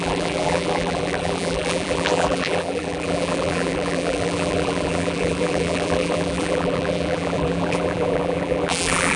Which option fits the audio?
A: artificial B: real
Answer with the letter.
A